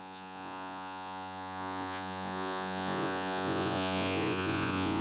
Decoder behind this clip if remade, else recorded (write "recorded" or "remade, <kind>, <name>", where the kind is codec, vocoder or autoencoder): remade, vocoder, Vocos